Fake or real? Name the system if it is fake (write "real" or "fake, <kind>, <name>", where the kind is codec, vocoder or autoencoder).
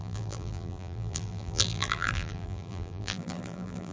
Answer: fake, vocoder, BigVGAN v2